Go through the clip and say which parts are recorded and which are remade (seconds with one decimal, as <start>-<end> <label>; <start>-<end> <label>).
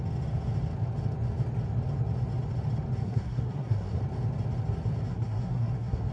0.0-3.0 recorded; 3.0-4.0 remade; 4.0-5.1 recorded; 5.1-6.1 remade